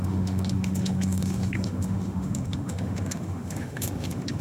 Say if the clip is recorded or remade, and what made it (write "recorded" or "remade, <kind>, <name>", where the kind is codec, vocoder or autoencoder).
remade, autoencoder, DAC-VAE